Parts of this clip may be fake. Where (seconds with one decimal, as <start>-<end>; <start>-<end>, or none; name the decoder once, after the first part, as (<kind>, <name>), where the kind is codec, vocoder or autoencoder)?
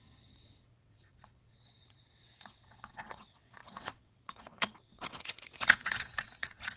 0.0-6.8 (vocoder, WaveNeXt)